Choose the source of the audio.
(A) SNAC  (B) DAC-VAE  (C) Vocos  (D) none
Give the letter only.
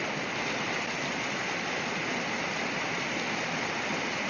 D